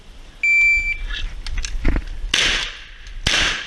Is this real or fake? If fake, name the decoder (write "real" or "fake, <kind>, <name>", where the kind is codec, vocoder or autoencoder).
real